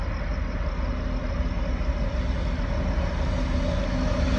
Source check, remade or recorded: recorded